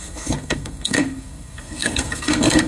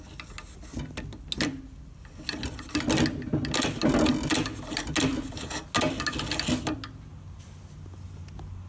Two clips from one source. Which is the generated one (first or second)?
first